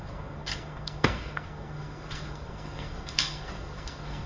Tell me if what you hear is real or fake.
fake